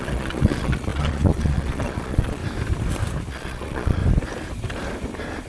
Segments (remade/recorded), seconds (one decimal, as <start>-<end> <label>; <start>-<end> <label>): 0.0-2.4 remade; 2.4-3.3 recorded; 3.3-4.0 remade; 4.0-5.5 recorded